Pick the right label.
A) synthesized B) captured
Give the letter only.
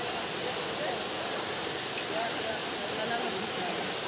B